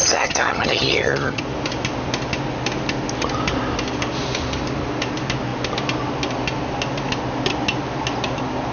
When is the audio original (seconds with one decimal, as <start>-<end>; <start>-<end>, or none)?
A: 1.4-8.7